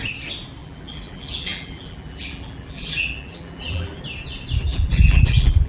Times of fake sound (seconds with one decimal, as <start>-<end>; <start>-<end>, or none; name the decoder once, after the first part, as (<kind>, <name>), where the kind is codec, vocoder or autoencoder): 0.6-4.0 (vocoder, BigVGAN v2); 4.7-5.7